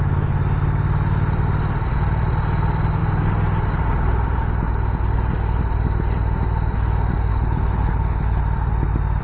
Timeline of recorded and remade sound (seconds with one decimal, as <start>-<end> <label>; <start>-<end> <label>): 0.0-7.3 recorded; 7.3-8.4 remade; 8.4-9.2 recorded